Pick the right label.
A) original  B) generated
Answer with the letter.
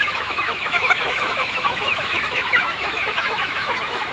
B